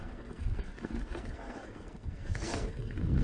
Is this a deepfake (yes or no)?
yes